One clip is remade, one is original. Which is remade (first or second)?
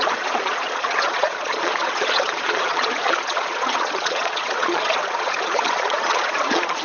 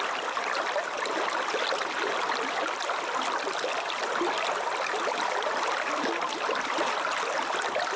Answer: first